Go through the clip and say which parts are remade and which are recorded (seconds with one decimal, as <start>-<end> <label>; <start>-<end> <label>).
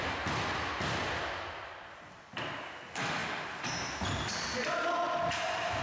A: 0.0-5.8 recorded